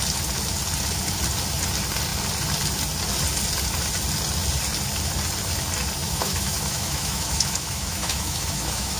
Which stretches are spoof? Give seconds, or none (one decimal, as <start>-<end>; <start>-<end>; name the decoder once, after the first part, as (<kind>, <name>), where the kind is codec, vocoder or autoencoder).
6.0-9.0 (autoencoder, DAC-VAE)